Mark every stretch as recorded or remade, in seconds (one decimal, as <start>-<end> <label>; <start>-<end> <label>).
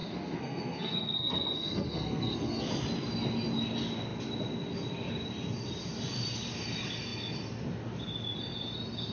0.0-2.7 remade; 2.7-9.1 recorded